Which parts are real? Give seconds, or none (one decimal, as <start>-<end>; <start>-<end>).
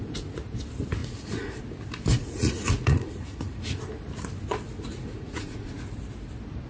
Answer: 0.0-1.0; 1.6-2.2; 3.8-4.9; 5.8-6.7